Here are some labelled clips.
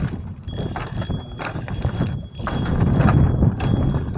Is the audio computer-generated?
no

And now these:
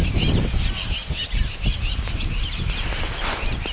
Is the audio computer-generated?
no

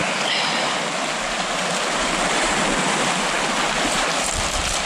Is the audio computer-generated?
no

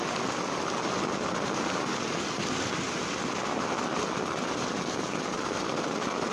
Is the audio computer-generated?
no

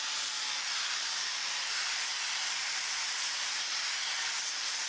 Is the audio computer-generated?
yes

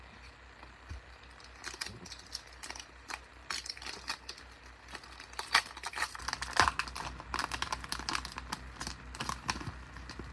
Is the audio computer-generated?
no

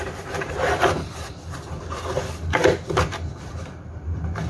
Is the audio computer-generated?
yes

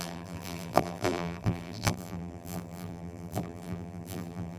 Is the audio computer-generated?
yes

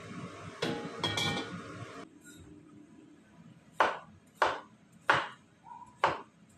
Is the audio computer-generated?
no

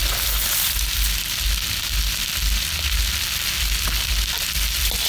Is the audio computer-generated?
no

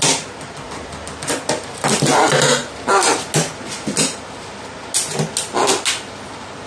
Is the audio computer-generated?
no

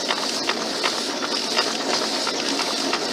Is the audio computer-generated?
no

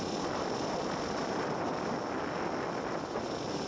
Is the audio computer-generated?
no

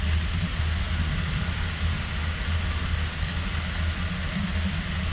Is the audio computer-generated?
no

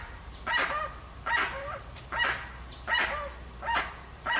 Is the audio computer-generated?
yes